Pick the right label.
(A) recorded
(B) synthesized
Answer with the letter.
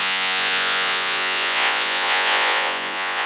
B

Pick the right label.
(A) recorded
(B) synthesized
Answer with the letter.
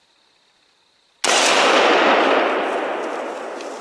A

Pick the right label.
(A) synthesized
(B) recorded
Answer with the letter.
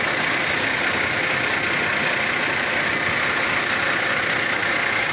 B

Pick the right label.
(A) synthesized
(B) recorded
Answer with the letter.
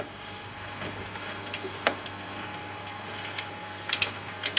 A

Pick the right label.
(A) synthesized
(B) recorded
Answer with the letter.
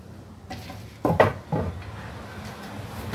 B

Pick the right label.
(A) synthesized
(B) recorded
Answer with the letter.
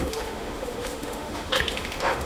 A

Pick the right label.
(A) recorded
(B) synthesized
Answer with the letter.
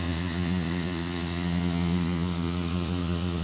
B